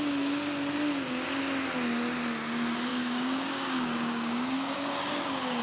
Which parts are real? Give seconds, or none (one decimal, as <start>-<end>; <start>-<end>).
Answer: 0.0-2.9